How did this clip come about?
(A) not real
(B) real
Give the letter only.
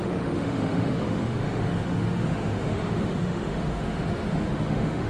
A